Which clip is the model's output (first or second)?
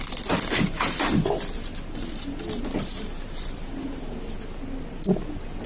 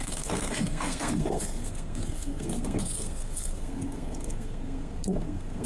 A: second